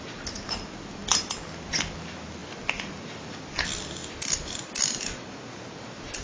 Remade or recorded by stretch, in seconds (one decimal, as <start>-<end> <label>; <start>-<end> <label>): 0.0-6.2 recorded